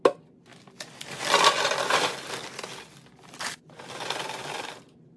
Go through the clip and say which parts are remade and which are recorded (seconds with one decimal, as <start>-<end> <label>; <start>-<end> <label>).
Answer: 0.0-5.2 recorded